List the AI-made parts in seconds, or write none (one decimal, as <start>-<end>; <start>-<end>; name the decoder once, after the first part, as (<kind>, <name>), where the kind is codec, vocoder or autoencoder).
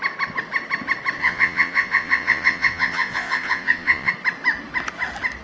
1.2-4.1 (vocoder, Vocos)